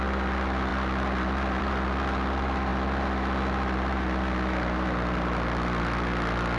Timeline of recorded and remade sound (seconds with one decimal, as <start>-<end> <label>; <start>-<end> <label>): 0.0-6.6 recorded